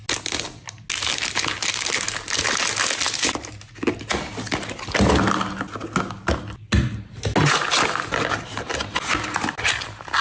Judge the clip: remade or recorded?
recorded